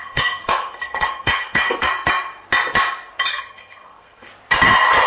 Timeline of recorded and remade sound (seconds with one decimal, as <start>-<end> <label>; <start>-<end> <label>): 0.0-1.9 remade; 1.9-3.3 recorded; 3.3-4.3 remade; 4.3-5.1 recorded